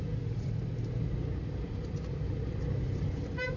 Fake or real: real